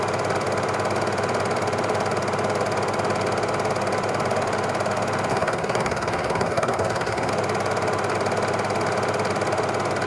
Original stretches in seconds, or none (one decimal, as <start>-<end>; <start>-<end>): 0.0-5.3; 7.3-10.1